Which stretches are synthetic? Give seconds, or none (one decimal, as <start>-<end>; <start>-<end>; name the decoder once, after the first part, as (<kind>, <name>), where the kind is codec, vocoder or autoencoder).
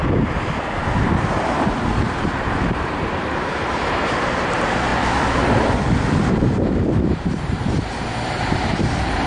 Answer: 1.9-4.9 (vocoder, BigVGAN v2); 6.3-9.3